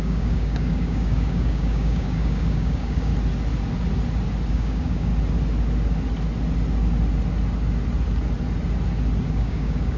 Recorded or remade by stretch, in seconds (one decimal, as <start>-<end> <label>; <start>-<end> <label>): 0.0-3.1 remade; 3.1-4.5 recorded; 4.5-5.1 remade; 5.1-9.3 recorded; 9.3-10.0 remade